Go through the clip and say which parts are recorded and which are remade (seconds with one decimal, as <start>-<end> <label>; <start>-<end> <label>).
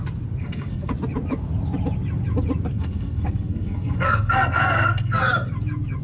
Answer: 0.0-0.4 recorded; 0.4-0.9 remade; 0.9-2.7 recorded; 2.7-5.2 remade; 5.2-6.0 recorded